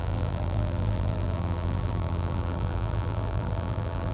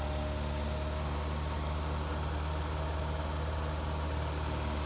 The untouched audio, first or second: second